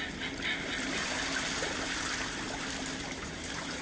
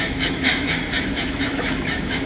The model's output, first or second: second